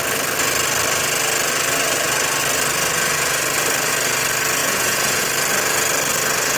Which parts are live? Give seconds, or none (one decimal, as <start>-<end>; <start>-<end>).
0.0-4.6; 5.2-6.6